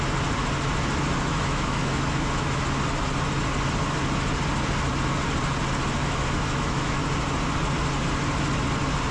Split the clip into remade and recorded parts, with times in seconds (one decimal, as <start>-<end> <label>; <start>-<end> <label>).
0.0-1.3 recorded; 1.3-2.6 remade; 2.6-6.0 recorded; 6.0-7.0 remade; 7.0-9.1 recorded

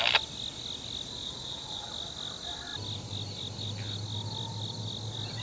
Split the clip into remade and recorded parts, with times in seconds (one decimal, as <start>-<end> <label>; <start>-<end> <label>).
0.0-1.2 recorded; 1.2-1.9 remade; 1.9-5.4 recorded

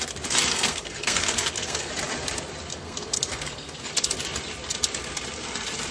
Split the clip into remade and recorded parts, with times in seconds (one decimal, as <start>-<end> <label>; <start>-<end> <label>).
0.0-0.5 recorded; 0.5-1.9 remade; 1.9-2.7 recorded; 2.7-3.9 remade; 3.9-5.9 recorded

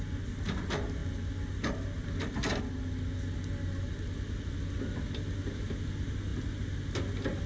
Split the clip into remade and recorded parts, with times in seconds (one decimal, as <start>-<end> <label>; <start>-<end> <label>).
0.0-7.5 recorded